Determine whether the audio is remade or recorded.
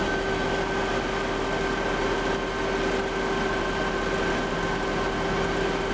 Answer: recorded